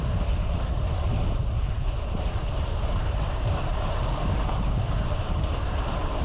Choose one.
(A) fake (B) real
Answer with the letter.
A